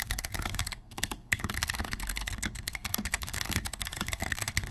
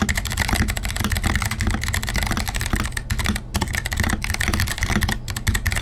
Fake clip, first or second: first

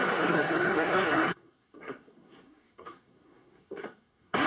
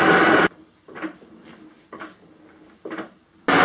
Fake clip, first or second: first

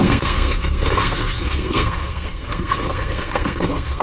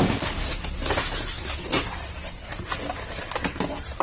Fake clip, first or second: first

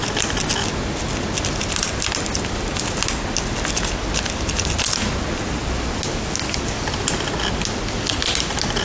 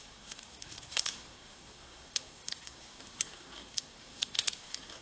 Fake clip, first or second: second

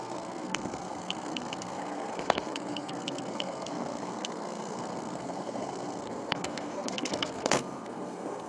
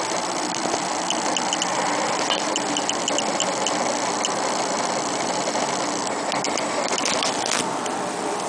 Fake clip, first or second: first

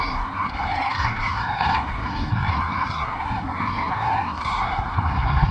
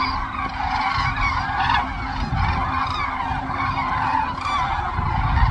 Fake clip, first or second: first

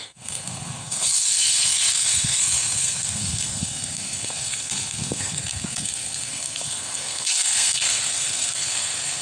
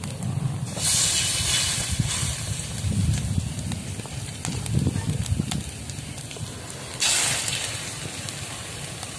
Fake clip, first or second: first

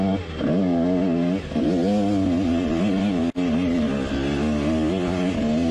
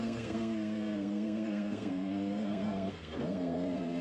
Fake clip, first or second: second